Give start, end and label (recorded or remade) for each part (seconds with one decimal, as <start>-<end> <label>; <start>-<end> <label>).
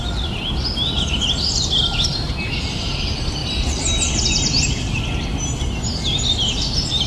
0.0-7.1 recorded